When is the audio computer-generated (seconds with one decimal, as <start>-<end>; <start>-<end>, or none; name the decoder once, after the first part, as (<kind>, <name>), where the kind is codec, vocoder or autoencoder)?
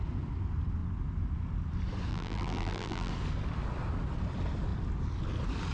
2.1-3.1 (vocoder, BigVGAN v2)